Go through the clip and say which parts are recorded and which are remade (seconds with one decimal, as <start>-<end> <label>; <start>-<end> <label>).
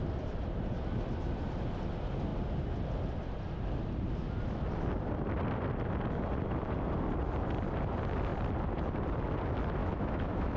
0.0-9.8 recorded; 9.8-10.6 remade